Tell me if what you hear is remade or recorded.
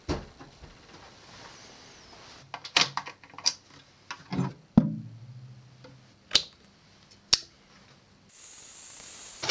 recorded